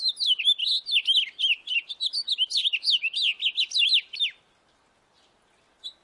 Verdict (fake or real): real